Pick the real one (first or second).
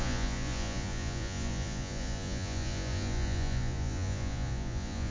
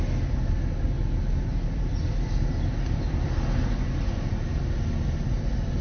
second